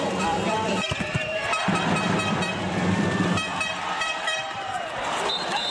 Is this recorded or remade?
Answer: remade